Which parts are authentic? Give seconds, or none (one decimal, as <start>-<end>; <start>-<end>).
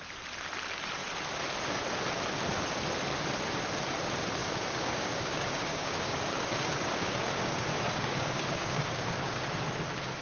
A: 0.0-4.4; 9.6-10.2